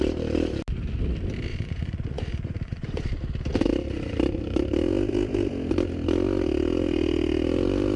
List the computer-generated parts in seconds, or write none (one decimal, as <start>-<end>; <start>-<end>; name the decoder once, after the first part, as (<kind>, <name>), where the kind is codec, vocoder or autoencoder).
1.5-3.1 (vocoder, Vocos)